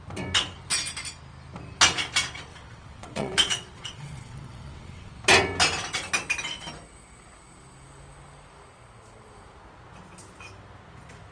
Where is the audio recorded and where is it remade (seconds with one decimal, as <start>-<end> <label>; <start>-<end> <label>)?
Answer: 0.0-2.5 recorded; 2.5-5.1 remade; 5.1-11.3 recorded